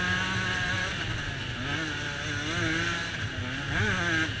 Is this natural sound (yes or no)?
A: yes